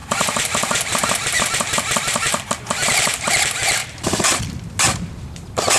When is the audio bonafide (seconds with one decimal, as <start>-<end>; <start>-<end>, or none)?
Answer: 3.3-3.8; 4.4-5.8